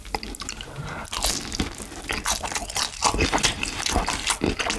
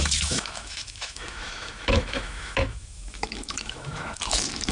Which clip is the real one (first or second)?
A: first